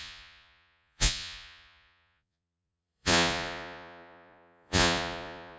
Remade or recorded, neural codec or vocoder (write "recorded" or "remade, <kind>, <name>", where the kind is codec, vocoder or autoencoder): remade, vocoder, Vocos